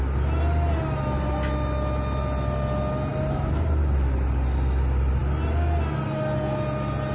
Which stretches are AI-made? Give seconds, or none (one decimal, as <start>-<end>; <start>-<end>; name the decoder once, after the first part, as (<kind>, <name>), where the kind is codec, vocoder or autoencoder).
none